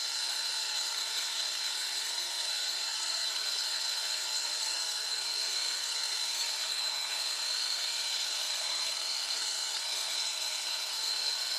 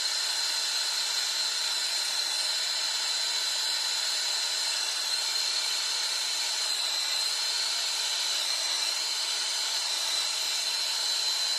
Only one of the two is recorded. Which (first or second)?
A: second